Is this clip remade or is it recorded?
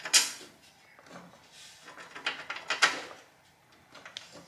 recorded